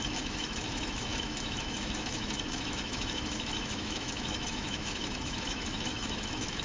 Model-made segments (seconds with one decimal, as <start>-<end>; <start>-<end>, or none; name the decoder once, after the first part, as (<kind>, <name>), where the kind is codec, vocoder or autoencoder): 0.0-6.6 (autoencoder, DAC-VAE)